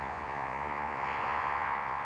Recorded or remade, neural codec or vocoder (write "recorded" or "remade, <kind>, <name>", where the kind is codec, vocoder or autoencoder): remade, vocoder, Vocos